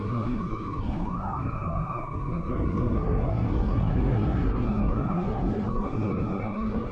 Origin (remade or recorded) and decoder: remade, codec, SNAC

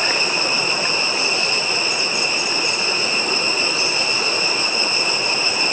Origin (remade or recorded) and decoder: recorded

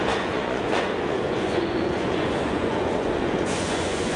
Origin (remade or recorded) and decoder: remade, vocoder, Vocos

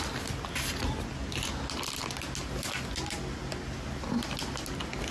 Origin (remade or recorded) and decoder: recorded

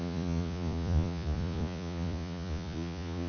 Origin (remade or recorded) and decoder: remade, vocoder, Vocos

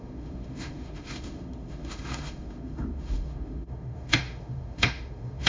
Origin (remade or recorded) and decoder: remade, autoencoder, DAC-VAE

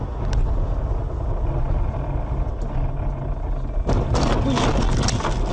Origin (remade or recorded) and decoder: recorded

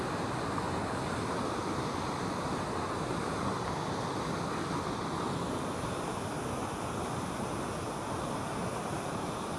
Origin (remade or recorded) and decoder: recorded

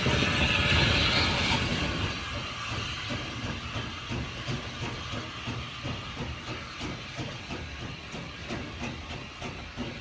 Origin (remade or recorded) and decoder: recorded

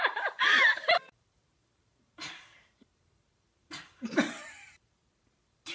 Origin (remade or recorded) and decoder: remade, vocoder, BigVGAN v2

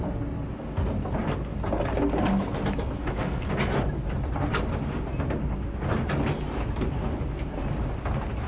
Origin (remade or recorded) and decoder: recorded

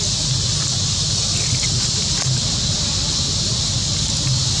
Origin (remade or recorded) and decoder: recorded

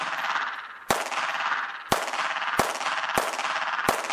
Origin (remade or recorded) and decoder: recorded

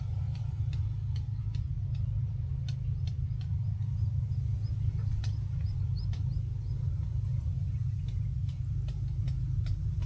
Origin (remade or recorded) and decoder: recorded